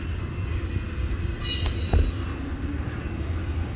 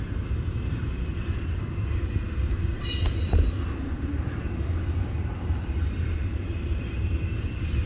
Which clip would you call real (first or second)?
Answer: first